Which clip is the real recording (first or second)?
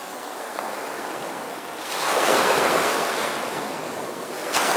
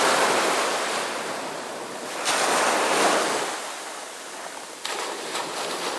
second